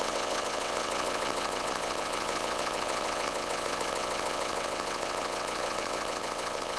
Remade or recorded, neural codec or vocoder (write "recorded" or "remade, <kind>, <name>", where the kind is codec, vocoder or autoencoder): remade, vocoder, WaveNeXt